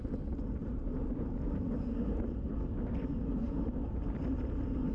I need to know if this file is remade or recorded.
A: recorded